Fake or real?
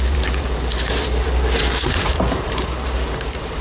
fake